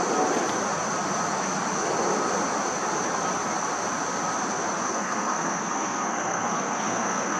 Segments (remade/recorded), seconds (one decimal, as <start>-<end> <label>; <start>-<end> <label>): 0.0-4.9 recorded; 4.9-7.4 remade